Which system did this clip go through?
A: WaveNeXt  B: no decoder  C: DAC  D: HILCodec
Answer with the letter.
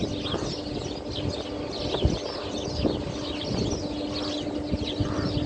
B